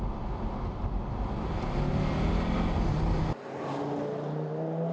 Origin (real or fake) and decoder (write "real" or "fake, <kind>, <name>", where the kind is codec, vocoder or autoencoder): real